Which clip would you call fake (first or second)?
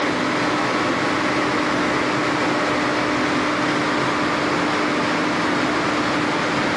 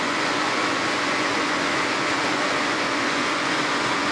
second